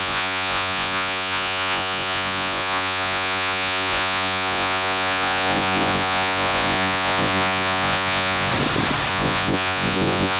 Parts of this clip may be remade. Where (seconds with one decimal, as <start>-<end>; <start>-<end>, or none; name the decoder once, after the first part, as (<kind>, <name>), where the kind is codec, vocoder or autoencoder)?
0.0-8.5 (vocoder, Vocos); 9.1-10.4

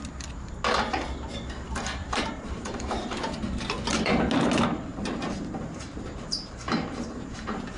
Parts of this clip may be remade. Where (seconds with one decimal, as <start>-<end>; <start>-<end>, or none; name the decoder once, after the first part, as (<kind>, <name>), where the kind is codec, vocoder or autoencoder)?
2.0-3.6 (vocoder, BigVGAN v2); 4.9-7.8